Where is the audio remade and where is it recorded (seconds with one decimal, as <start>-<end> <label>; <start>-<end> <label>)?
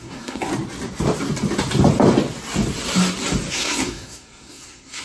0.0-0.5 remade; 0.5-3.5 recorded; 3.5-5.0 remade